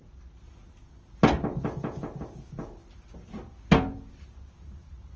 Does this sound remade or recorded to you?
recorded